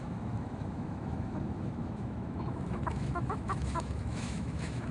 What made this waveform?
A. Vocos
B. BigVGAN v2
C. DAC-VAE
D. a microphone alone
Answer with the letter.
C